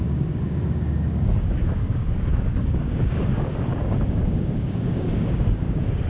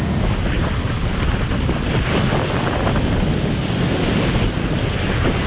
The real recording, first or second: second